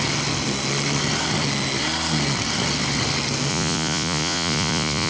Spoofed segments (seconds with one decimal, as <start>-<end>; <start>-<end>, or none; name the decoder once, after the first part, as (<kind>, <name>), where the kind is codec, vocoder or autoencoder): 3.5-5.1 (vocoder, Vocos)